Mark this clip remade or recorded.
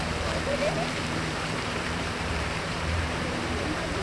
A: remade